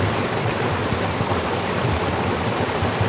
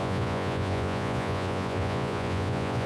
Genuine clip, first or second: first